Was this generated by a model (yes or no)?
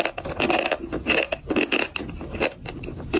no